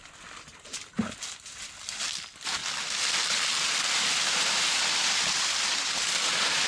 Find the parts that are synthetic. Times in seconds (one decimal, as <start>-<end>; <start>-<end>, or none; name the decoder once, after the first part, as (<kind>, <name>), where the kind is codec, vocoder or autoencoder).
2.6-4.6 (vocoder, BigVGAN v2)